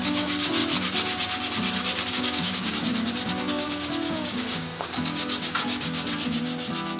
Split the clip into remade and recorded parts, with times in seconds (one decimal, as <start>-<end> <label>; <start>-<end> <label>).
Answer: 0.0-0.6 remade; 0.6-2.1 recorded; 2.1-2.9 remade; 2.9-3.4 recorded; 3.4-7.0 remade